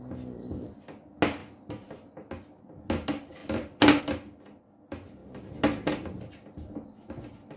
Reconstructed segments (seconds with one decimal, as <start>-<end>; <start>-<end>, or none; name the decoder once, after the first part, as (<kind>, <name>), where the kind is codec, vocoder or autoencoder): none